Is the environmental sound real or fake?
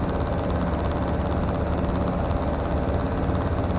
real